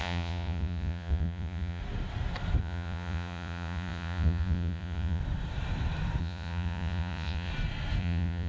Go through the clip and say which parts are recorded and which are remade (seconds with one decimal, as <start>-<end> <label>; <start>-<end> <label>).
0.0-1.8 remade; 1.8-2.6 recorded; 2.6-5.2 remade; 5.2-6.2 recorded; 6.2-7.5 remade; 7.5-8.0 recorded; 8.0-8.5 remade